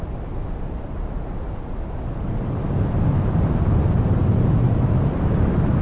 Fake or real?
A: real